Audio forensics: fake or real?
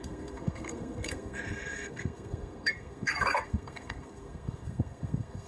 fake